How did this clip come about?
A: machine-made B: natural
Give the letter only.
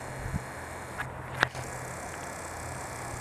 B